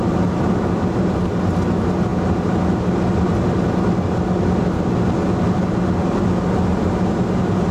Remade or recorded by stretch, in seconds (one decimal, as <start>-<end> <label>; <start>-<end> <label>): 0.0-7.7 recorded